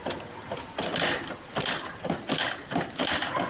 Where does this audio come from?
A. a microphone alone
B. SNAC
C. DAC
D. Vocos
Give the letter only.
A